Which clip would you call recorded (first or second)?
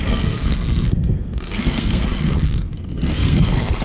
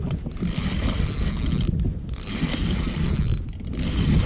second